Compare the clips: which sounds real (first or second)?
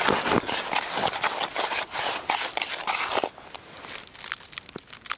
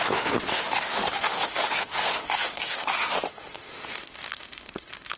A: first